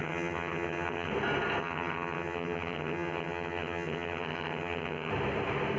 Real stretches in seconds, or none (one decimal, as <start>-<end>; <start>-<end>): 1.1-1.6; 5.1-5.8